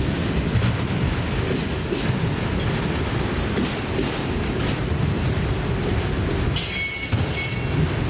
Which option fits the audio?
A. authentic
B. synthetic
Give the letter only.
A